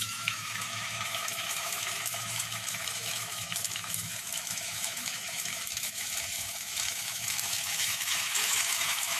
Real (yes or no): no